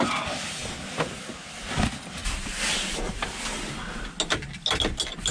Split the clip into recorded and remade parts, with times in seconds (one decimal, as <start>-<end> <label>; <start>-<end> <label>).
0.0-5.3 recorded

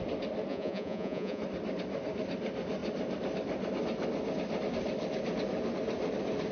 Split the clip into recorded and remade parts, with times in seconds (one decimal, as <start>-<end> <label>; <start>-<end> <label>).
0.0-0.5 recorded; 0.5-1.4 remade; 1.4-6.5 recorded

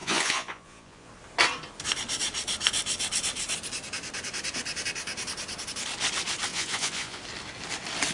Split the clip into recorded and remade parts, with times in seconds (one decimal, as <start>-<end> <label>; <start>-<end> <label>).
0.0-1.1 remade; 1.1-6.5 recorded; 6.5-7.2 remade; 7.2-8.1 recorded